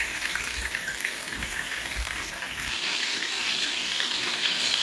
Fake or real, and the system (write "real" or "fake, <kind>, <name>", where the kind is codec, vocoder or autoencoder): fake, codec, DAC